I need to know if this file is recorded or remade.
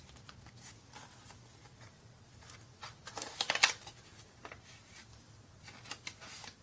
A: recorded